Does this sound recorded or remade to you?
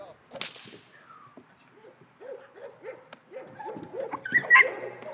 recorded